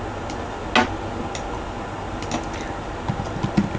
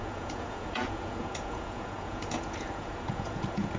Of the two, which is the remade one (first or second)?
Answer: second